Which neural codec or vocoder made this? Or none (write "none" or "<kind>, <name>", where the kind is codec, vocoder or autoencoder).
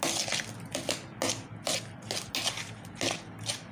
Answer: none